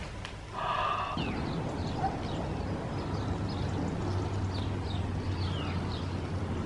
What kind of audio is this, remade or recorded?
recorded